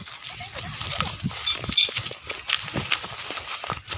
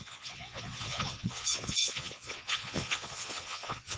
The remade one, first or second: second